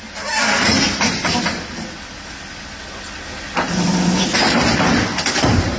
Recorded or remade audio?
recorded